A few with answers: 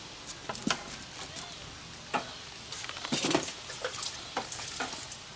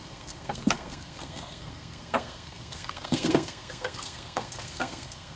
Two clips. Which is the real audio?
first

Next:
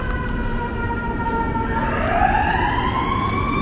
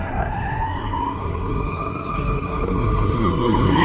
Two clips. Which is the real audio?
first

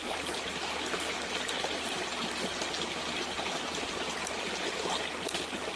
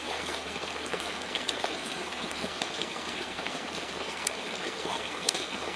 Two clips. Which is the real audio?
first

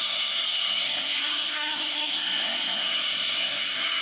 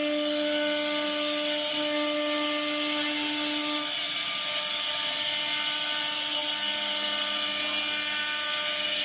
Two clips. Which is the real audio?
second